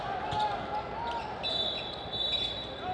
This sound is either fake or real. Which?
real